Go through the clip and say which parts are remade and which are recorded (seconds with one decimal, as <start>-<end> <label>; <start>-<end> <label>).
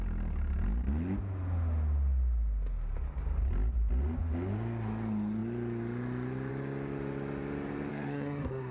0.0-7.9 recorded; 7.9-8.7 remade